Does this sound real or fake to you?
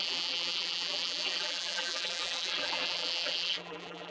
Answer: fake